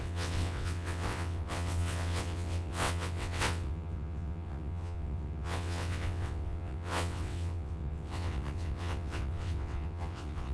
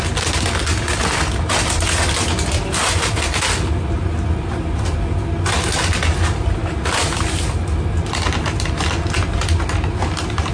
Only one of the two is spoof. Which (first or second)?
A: first